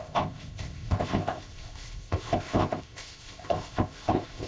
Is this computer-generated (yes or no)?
yes